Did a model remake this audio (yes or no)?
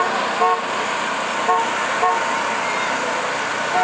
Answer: no